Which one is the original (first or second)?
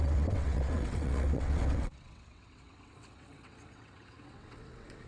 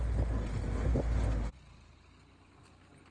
second